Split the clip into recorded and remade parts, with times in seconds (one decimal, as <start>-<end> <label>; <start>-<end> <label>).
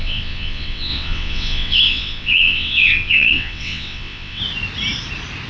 0.0-4.4 remade; 4.4-5.5 recorded